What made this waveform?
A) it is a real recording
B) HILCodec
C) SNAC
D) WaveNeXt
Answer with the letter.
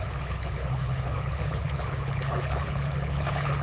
B